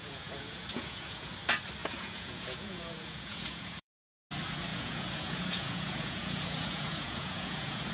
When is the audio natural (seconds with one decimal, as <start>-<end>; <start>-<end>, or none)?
1.3-1.8; 3.9-4.7